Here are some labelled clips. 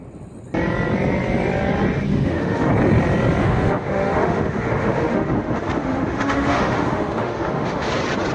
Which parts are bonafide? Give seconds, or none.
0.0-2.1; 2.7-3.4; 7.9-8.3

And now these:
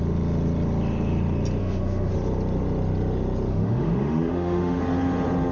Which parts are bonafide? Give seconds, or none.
0.0-1.6; 2.1-3.5; 4.8-5.5

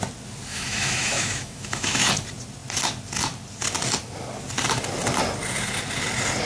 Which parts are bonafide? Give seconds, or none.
0.0-0.5; 2.1-6.5

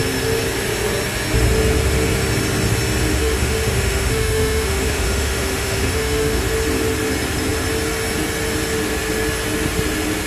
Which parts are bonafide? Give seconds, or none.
0.0-3.1; 6.4-10.3

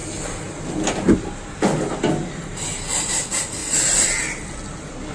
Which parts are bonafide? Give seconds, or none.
0.0-5.1

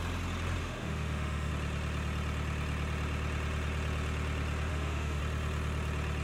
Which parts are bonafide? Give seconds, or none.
0.0-0.6; 1.5-4.7; 5.2-6.2

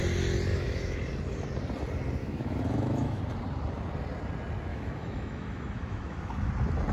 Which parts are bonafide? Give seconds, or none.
0.0-0.5; 1.0-2.2; 3.2-4.7; 6.5-6.9

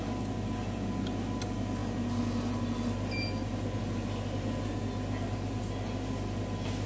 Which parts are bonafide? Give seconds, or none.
0.0-6.9